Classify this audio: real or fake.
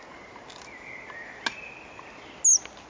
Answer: real